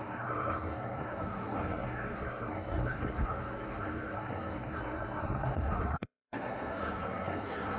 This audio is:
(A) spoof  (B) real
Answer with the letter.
A